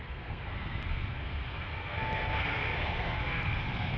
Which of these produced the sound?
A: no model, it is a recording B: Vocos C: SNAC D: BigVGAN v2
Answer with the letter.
C